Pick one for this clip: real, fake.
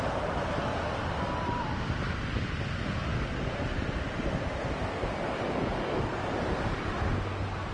real